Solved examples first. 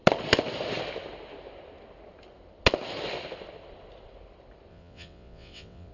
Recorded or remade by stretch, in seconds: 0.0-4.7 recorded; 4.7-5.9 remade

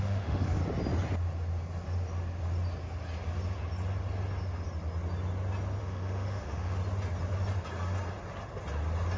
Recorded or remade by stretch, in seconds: 0.0-0.6 remade; 0.6-5.8 recorded; 5.8-6.8 remade; 6.8-9.2 recorded

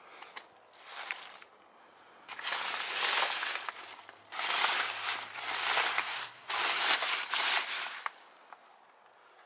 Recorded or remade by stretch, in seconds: 0.0-6.0 recorded; 6.0-6.5 remade; 6.5-9.5 recorded

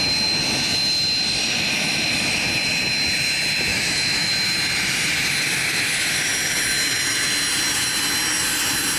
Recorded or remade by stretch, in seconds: 0.0-3.7 recorded; 3.7-4.3 remade; 4.3-9.0 recorded